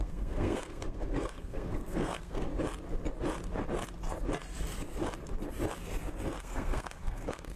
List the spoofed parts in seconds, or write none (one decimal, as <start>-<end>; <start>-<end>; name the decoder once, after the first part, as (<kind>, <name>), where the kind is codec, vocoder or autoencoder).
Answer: 0.0-2.5 (codec, SNAC); 6.4-7.6